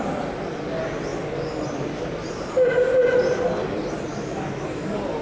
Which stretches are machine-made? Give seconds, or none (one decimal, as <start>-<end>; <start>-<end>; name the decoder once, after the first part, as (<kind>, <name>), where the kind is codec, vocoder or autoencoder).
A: 4.1-4.8 (autoencoder, DAC-VAE)